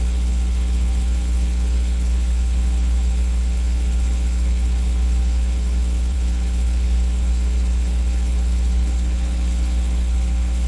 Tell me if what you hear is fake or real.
fake